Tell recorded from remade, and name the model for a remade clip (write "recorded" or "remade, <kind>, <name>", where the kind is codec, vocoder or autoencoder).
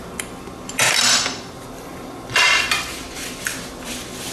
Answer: remade, vocoder, BigVGAN v2